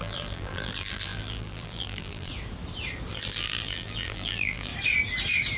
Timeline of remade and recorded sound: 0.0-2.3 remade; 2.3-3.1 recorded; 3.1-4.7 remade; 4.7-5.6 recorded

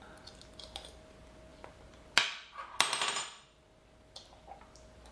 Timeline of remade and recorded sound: 0.0-5.1 recorded